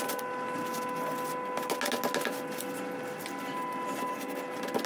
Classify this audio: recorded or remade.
recorded